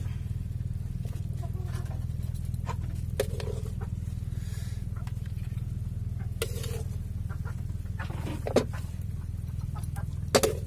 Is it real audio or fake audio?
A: real